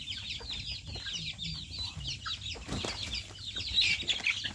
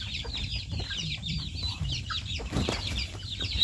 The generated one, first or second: second